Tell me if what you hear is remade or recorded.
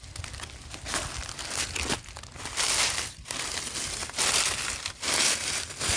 recorded